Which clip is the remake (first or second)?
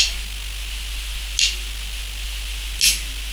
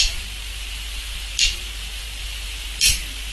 second